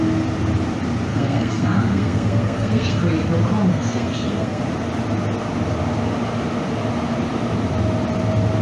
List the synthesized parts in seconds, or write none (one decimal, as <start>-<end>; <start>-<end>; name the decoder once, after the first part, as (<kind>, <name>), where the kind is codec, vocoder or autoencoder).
1.1-3.0 (codec, SNAC); 3.7-4.6